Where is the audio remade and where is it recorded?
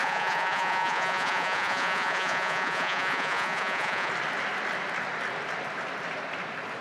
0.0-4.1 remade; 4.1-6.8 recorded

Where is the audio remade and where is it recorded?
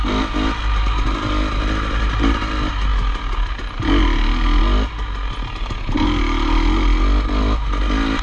0.0-8.2 recorded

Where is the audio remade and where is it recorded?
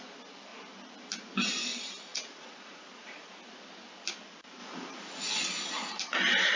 0.0-2.1 recorded; 2.1-3.4 remade; 3.4-4.6 recorded; 4.6-6.0 remade; 6.0-6.6 recorded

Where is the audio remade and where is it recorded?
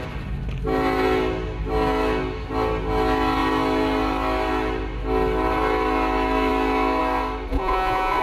0.0-7.5 recorded; 7.5-8.2 remade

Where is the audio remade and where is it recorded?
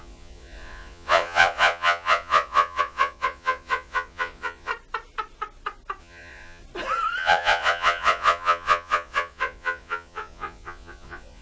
0.0-4.7 remade; 4.7-6.0 recorded; 6.0-6.6 remade; 6.6-7.2 recorded; 7.2-11.4 remade